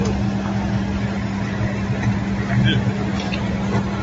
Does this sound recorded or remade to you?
recorded